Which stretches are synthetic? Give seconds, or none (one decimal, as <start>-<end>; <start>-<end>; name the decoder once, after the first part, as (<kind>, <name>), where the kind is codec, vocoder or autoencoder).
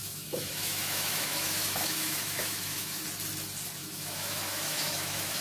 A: 0.0-3.0 (autoencoder, DAC-VAE); 3.8-5.4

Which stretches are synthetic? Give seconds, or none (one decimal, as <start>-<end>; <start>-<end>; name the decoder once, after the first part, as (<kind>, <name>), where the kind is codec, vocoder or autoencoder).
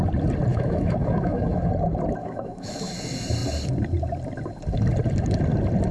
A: 0.5-1.7 (autoencoder, DAC-VAE); 2.2-2.9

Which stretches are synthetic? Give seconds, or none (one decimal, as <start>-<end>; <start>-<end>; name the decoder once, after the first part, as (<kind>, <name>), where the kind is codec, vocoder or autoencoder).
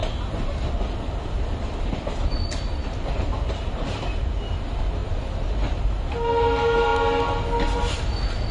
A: none